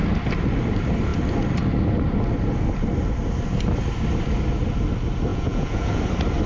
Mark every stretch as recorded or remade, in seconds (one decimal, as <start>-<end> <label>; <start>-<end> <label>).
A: 0.0-5.3 recorded; 5.3-6.0 remade; 6.0-6.5 recorded